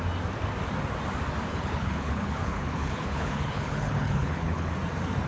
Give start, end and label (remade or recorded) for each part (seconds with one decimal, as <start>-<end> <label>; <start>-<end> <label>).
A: 0.0-1.5 recorded; 1.5-4.7 remade; 4.7-5.3 recorded